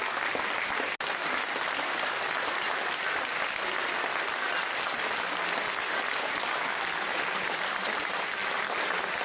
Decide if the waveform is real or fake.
real